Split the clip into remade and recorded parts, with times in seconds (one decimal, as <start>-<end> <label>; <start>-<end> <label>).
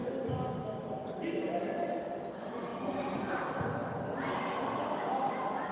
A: 0.0-5.7 recorded